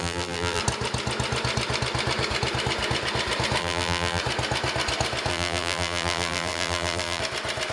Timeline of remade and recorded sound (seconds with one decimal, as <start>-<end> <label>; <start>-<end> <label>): 0.0-0.6 remade; 0.6-3.6 recorded; 3.6-4.2 remade; 4.2-5.3 recorded; 5.3-7.2 remade; 7.2-7.7 recorded